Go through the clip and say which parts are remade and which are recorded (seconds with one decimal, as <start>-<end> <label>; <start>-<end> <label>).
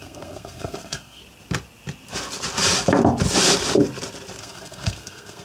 0.0-1.2 remade; 1.2-4.4 recorded; 4.4-5.4 remade